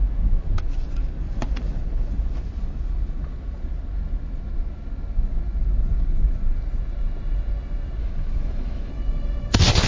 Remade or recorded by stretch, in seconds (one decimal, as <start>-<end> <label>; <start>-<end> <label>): 0.0-8.0 recorded; 8.0-8.9 remade; 8.9-9.9 recorded